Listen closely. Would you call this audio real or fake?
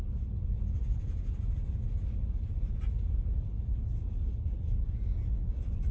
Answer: real